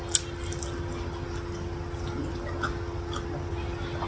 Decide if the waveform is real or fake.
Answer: real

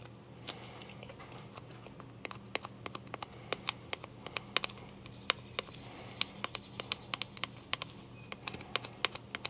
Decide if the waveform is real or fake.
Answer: real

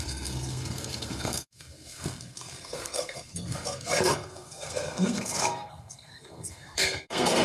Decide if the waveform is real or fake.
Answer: fake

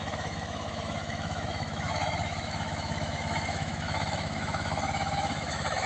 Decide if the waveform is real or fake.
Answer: fake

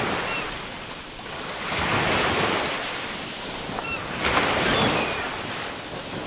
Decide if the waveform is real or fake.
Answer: real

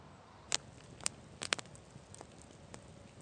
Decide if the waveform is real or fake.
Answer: real